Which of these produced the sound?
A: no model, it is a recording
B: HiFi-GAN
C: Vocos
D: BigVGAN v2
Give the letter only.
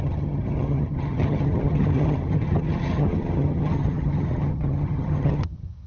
B